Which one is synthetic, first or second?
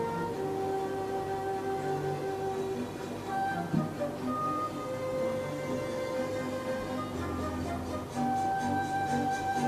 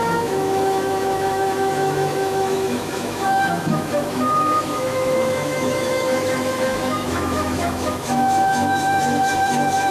second